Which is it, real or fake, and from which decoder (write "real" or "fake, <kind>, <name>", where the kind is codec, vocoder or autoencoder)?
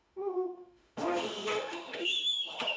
fake, autoencoder, DAC-VAE